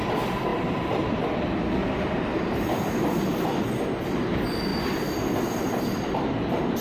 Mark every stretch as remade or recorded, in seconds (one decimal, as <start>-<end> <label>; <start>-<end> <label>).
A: 0.0-0.5 recorded; 0.5-1.2 remade; 1.2-1.8 recorded; 1.8-3.1 remade; 3.1-6.8 recorded